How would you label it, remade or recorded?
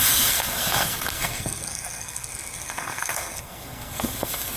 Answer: remade